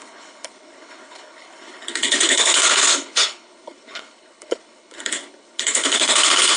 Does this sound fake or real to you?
fake